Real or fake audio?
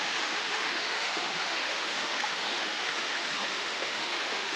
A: fake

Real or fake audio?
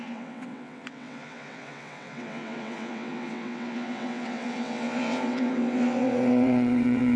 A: fake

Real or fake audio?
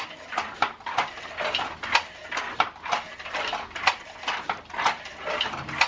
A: real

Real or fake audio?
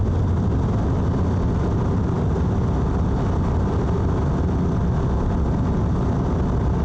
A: real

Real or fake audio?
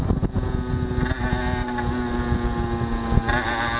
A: real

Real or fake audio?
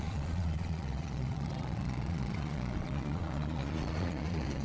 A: fake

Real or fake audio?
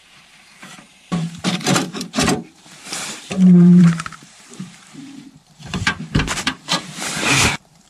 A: fake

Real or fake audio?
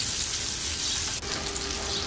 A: real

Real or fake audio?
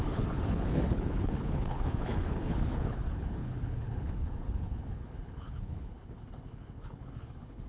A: fake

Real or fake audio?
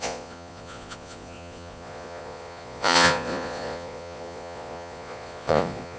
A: fake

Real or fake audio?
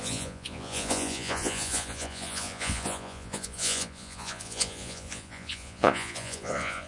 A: fake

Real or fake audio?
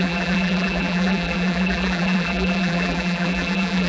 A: fake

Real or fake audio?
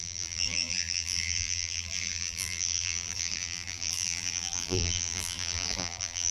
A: fake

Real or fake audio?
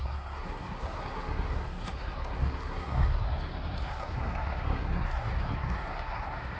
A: fake